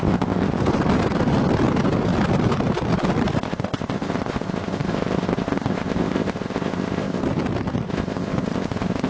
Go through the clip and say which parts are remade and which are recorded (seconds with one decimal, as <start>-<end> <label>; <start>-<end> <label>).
0.0-0.6 remade; 0.6-3.4 recorded; 3.4-7.2 remade; 7.2-7.9 recorded; 7.9-9.1 remade

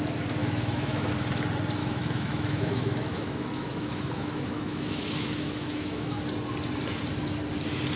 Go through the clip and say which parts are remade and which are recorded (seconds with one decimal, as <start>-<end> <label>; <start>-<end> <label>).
0.0-0.4 recorded; 0.4-1.1 remade; 1.1-1.8 recorded; 1.8-6.2 remade; 6.2-8.0 recorded

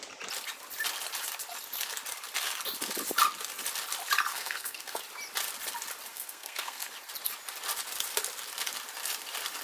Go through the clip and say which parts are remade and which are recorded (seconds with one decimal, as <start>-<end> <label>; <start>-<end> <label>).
0.0-4.3 recorded; 4.3-5.0 remade; 5.0-6.1 recorded; 6.1-6.9 remade; 6.9-9.6 recorded

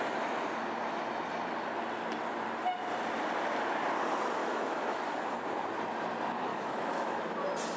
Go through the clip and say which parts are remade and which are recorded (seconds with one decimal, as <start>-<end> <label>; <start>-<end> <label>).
0.0-4.4 recorded; 4.4-5.0 remade; 5.0-6.5 recorded; 6.5-7.2 remade; 7.2-7.8 recorded

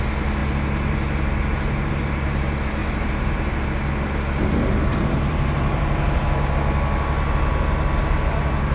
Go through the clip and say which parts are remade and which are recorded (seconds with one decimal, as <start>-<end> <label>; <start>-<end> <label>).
0.0-2.8 recorded; 2.8-3.6 remade; 3.6-4.9 recorded; 4.9-6.2 remade; 6.2-8.7 recorded

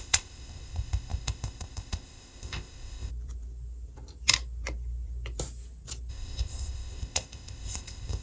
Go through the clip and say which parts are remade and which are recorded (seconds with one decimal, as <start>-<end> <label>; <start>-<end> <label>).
0.0-3.1 remade; 3.1-6.1 recorded; 6.1-8.2 remade

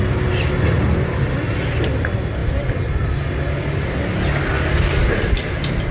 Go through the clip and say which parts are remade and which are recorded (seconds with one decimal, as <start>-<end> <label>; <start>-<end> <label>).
0.0-5.9 recorded

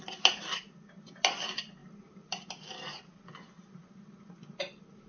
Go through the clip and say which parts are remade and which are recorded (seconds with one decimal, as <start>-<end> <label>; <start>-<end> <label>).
0.0-5.1 recorded